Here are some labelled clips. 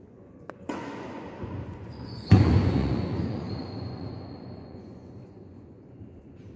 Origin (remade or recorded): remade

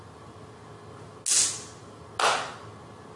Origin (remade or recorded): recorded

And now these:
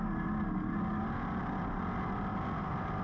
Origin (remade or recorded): recorded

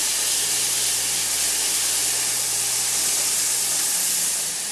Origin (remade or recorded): recorded